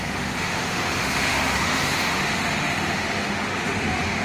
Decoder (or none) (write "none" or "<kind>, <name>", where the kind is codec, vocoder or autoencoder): autoencoder, DAC-VAE